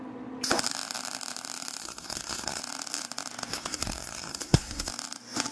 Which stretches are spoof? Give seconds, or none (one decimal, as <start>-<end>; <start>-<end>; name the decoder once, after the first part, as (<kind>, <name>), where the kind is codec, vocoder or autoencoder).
1.8-2.6 (codec, SNAC); 3.5-4.9